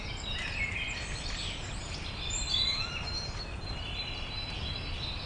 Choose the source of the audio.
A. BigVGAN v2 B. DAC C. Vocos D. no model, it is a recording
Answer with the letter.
D